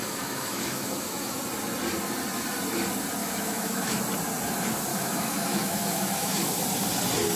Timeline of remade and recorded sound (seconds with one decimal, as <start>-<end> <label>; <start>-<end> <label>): 0.0-1.4 remade; 1.4-3.2 recorded; 3.2-4.0 remade; 4.0-4.9 recorded; 4.9-6.6 remade; 6.6-7.4 recorded